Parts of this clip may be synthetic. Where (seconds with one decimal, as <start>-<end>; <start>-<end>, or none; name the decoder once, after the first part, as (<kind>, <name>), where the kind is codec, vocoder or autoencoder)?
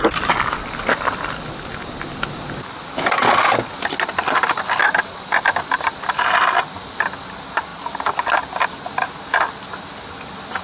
none